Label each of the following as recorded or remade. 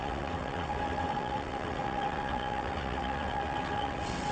remade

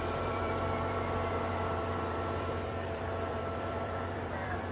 remade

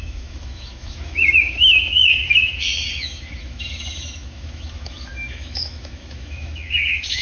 remade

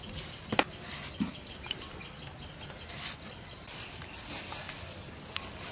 recorded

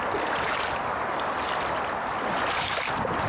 recorded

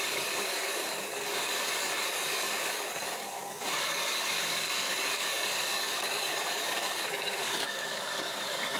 remade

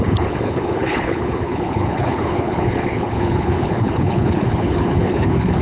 remade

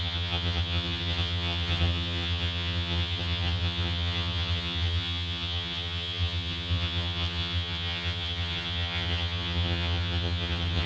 remade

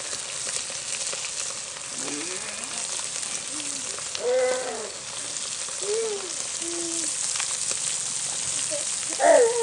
recorded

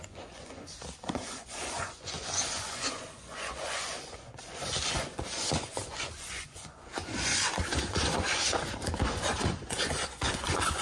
remade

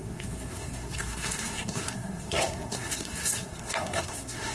remade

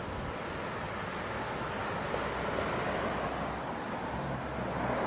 recorded